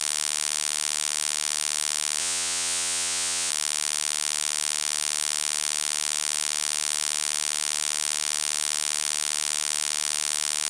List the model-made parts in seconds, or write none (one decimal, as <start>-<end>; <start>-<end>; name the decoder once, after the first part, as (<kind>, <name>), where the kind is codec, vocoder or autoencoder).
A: 2.2-3.5 (vocoder, WaveNeXt)